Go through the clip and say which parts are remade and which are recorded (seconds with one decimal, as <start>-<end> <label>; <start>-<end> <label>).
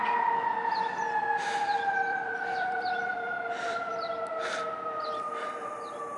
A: 0.0-2.1 recorded; 2.1-5.8 remade; 5.8-6.2 recorded